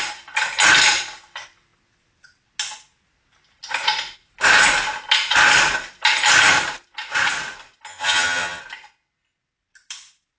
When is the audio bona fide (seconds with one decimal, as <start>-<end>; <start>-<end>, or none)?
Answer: 0.0-7.9; 8.6-10.4